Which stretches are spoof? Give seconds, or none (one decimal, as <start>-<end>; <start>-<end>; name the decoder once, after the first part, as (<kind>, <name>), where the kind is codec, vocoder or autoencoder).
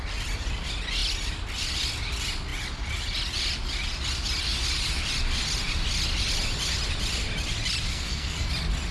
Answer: 7.9-8.5 (codec, SNAC)